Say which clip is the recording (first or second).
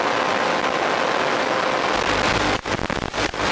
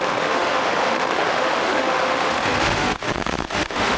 first